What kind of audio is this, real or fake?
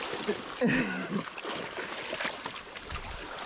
real